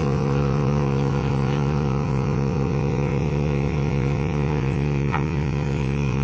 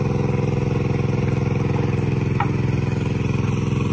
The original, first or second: second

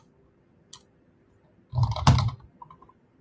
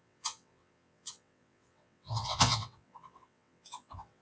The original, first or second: first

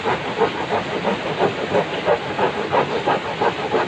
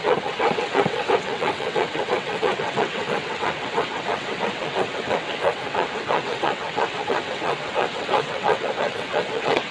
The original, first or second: first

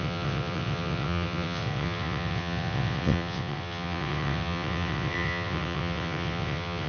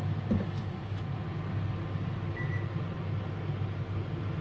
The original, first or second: second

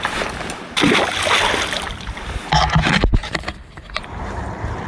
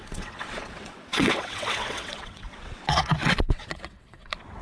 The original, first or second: first